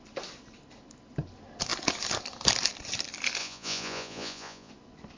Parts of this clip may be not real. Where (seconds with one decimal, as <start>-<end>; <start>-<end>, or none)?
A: 3.4-4.7